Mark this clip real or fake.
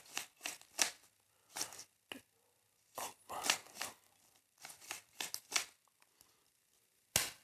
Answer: real